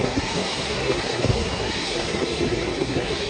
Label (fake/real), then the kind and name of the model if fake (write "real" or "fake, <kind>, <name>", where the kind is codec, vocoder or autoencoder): fake, codec, SNAC